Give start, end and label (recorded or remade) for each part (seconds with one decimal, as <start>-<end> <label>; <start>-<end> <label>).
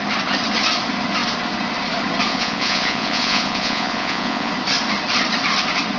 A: 0.0-2.3 recorded; 2.3-4.5 remade; 4.5-6.0 recorded